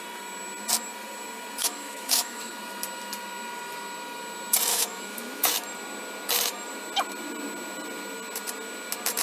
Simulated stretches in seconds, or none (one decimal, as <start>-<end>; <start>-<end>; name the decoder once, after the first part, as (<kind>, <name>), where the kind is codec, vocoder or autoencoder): 1.6-2.5 (autoencoder, DAC-VAE); 4.7-5.5